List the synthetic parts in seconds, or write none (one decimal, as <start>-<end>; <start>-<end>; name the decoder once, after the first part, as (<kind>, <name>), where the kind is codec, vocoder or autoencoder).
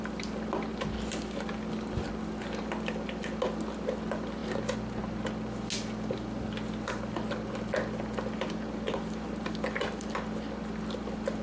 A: none